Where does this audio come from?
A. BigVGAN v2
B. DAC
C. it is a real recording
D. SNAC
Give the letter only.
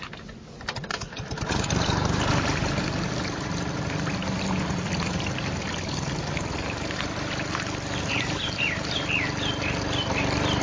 C